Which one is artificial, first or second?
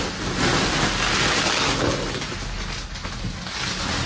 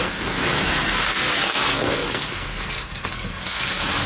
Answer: second